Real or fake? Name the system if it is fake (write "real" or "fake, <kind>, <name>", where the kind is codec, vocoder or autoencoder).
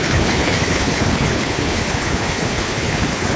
fake, codec, HILCodec